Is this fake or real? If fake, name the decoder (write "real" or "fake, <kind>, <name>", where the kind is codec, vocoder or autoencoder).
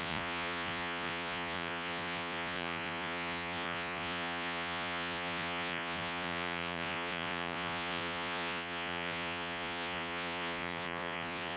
fake, vocoder, Vocos